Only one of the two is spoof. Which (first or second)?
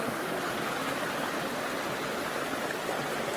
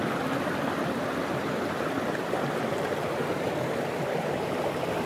second